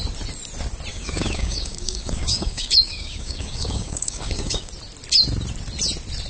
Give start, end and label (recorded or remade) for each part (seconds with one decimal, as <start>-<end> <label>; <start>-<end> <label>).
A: 0.0-0.9 recorded; 0.9-4.7 remade; 4.7-6.3 recorded